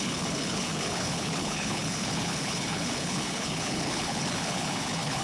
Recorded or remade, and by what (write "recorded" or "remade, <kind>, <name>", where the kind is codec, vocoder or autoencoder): remade, codec, HILCodec